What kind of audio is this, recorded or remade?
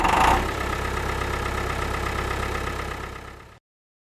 recorded